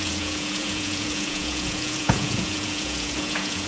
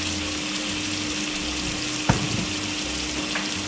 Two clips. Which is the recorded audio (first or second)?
second